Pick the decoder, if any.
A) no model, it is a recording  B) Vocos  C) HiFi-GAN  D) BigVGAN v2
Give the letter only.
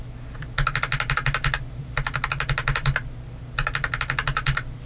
A